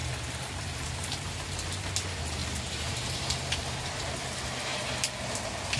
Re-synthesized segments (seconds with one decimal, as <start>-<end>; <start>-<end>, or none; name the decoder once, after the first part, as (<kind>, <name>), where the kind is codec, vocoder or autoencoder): 0.0-1.8 (vocoder, BigVGAN v2); 2.4-3.9